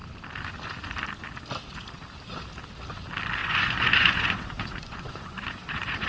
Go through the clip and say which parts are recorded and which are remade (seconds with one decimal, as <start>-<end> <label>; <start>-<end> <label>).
0.0-3.4 recorded; 3.4-6.1 remade